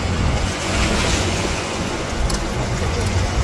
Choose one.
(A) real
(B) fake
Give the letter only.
B